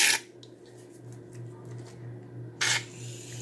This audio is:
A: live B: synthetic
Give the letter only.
A